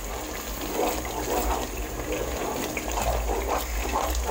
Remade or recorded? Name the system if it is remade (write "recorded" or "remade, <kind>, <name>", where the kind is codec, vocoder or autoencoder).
recorded